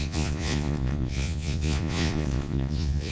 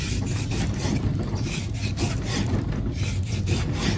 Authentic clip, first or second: second